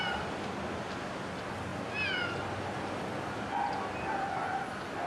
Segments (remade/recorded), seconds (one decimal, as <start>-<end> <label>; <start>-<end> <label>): 0.0-5.1 recorded